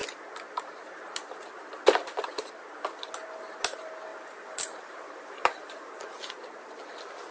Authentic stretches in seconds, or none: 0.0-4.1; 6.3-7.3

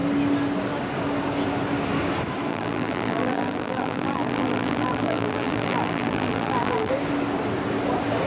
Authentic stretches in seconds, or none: 0.0-2.5; 6.9-8.3

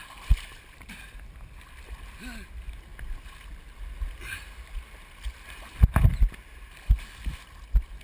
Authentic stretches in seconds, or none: 0.0-8.0